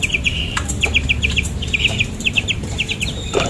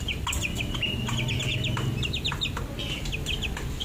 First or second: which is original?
second